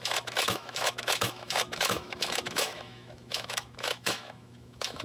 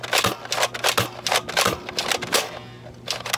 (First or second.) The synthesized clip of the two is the first